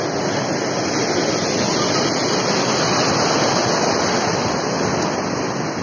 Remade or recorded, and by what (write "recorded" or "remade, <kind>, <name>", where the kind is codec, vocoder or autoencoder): recorded